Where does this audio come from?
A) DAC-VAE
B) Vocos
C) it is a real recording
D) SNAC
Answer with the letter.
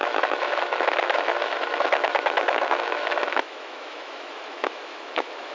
A